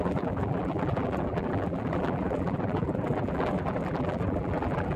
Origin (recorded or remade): remade